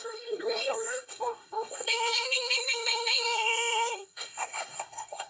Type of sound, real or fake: fake